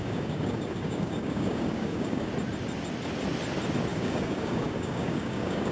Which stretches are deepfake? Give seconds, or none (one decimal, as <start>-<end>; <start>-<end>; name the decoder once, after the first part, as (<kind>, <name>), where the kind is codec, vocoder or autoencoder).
0.0-2.3 (codec, DAC); 3.9-5.7